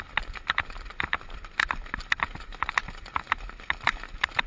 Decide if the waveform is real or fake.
real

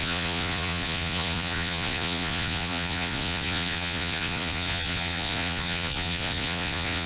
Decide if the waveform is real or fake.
fake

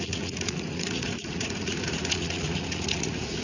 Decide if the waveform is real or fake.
fake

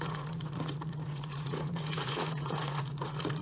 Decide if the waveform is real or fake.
fake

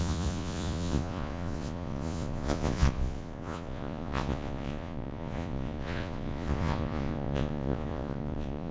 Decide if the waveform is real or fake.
fake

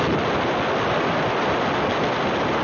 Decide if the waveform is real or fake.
real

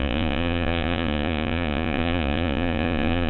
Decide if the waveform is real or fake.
fake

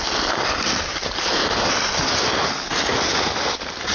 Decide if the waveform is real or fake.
real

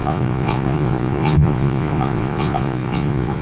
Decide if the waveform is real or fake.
fake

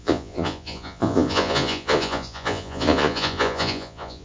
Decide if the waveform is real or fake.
fake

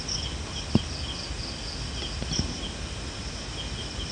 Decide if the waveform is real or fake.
real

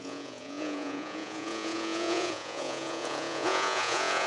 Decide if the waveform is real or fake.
fake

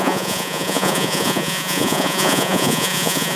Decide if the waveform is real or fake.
fake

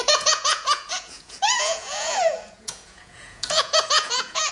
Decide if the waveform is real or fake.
fake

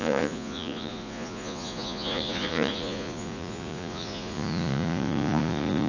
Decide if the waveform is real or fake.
fake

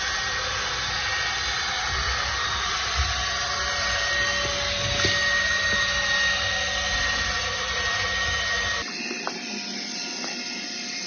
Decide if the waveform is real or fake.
real